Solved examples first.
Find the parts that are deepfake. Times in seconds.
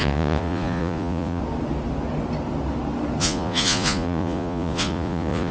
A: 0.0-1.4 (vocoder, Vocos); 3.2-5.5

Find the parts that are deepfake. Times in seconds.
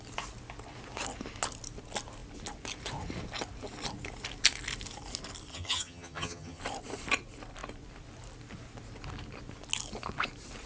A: 5.5-6.6 (vocoder, HiFi-GAN)